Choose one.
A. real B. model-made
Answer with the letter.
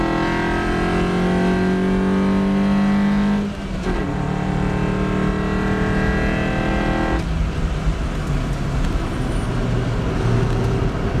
A